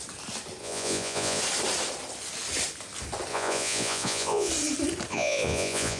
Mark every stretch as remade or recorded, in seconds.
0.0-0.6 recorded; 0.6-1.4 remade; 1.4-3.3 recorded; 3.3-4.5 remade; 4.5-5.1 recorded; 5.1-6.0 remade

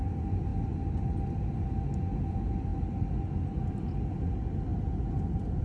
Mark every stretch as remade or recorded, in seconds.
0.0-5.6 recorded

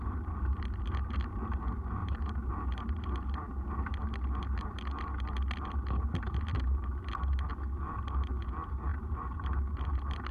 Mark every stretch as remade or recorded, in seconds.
0.0-2.0 recorded; 2.0-2.8 remade; 2.8-8.9 recorded; 8.9-10.3 remade

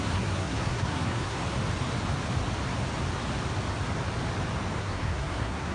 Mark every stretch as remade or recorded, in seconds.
0.0-1.4 remade; 1.4-4.8 recorded; 4.8-5.7 remade